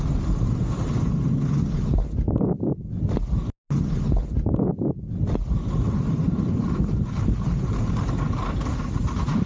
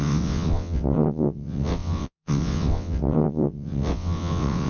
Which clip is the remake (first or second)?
second